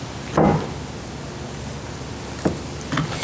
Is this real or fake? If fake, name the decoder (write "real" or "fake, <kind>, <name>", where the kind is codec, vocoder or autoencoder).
real